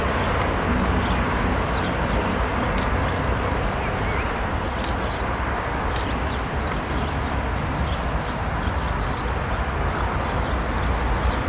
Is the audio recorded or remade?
recorded